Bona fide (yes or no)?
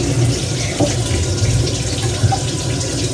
yes